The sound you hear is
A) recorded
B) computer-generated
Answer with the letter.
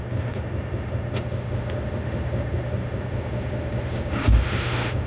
B